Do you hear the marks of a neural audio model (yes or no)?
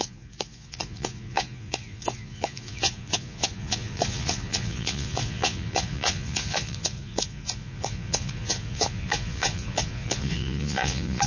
yes